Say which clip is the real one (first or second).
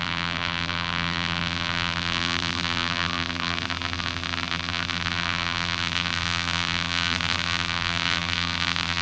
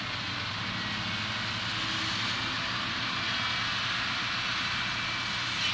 second